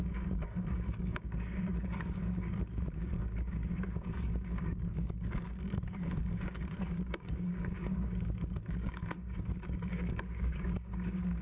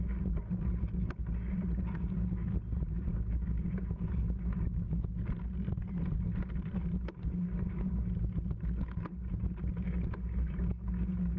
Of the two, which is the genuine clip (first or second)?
second